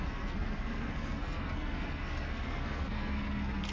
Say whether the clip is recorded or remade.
remade